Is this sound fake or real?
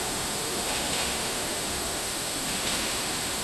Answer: fake